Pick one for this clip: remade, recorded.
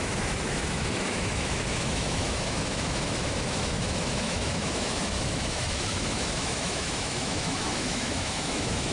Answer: remade